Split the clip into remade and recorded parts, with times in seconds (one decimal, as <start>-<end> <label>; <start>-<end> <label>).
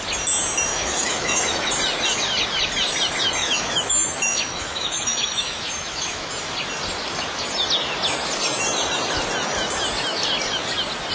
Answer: 0.0-0.7 recorded; 0.7-1.7 remade; 1.7-3.4 recorded; 3.4-6.3 remade; 6.3-11.1 recorded